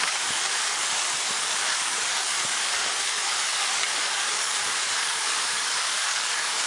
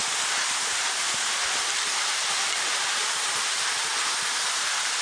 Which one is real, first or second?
second